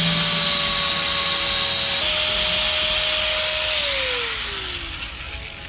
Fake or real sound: real